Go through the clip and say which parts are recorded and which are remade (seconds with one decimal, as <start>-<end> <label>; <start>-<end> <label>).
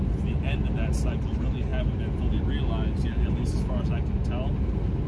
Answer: 0.0-5.1 recorded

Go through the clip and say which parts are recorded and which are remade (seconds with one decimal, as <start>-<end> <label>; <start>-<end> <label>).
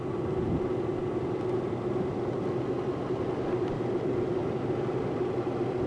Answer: 0.0-5.9 recorded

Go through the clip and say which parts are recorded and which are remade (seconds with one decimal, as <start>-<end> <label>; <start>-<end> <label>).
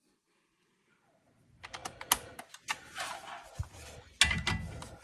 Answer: 0.0-5.0 recorded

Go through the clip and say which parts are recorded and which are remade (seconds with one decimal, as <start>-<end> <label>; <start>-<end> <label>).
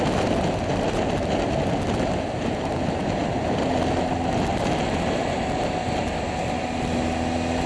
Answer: 0.0-7.7 recorded